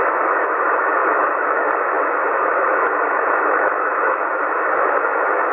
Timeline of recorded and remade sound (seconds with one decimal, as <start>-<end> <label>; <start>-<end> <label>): 0.0-5.5 remade